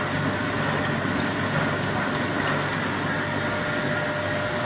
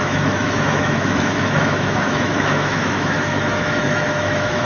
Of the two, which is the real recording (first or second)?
first